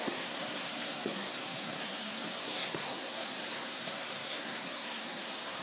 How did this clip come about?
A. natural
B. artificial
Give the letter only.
B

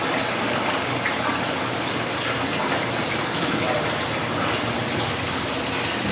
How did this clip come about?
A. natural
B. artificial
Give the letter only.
A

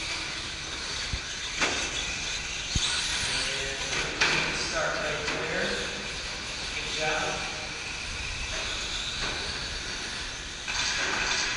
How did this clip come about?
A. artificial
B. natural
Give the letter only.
B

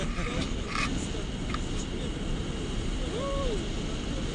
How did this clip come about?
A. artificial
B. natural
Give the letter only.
B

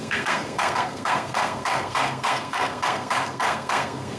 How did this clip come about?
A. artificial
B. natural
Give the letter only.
A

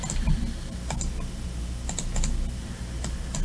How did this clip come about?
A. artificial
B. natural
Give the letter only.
B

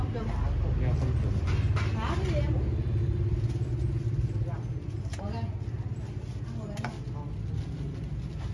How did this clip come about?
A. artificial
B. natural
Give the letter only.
B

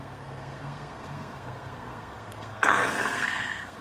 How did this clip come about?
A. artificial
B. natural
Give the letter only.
A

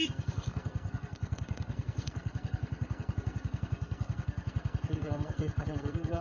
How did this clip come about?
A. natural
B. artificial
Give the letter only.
B